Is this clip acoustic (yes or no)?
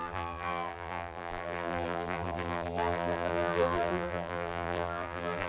no